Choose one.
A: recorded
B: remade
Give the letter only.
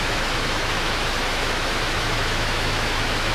B